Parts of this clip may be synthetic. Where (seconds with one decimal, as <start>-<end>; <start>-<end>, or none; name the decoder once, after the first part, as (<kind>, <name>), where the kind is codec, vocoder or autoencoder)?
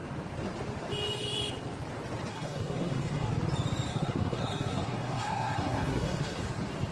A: 2.3-3.3 (codec, SNAC); 3.9-6.5